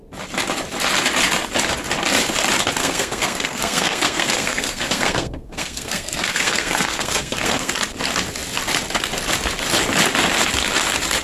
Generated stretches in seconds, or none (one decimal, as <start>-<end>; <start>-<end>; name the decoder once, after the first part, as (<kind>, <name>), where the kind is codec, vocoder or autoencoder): 2.8-7.7 (codec, SNAC)